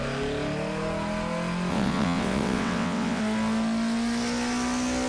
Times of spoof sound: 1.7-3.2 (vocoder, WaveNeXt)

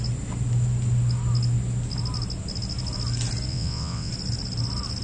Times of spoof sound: 3.5-4.1 (vocoder, WaveNeXt)

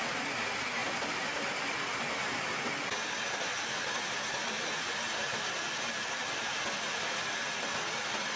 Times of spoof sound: none